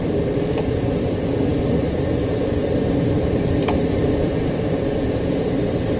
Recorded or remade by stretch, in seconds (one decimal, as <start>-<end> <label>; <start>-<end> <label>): 0.0-1.5 recorded; 1.5-5.1 remade; 5.1-6.0 recorded